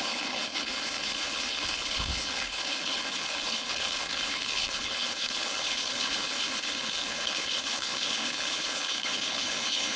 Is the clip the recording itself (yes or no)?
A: no